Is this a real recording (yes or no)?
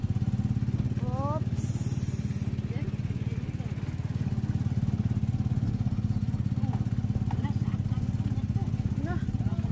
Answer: yes